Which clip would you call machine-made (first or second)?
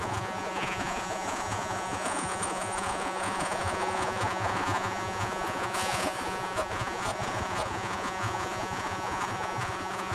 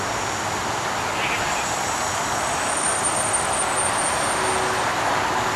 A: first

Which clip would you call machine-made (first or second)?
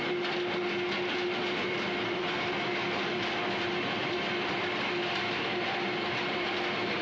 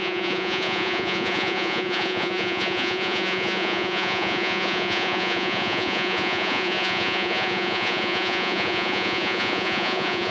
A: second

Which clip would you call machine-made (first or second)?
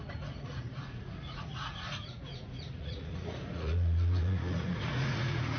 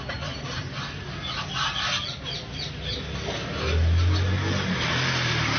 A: first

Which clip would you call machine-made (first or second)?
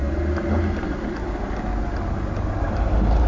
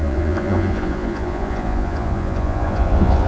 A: second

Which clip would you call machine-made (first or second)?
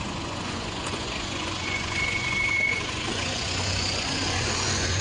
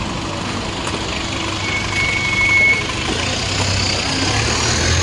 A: first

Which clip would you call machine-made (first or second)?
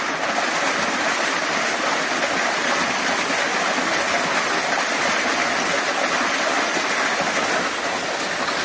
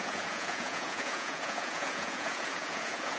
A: second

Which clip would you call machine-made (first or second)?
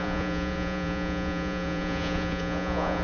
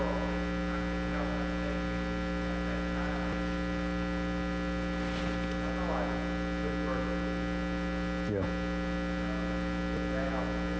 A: first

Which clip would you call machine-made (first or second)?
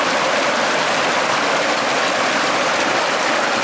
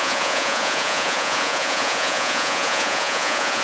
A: second